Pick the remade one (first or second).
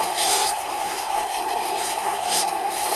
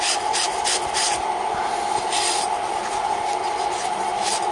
first